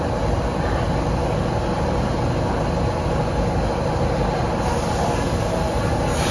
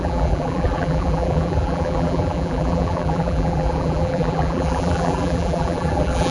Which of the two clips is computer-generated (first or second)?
second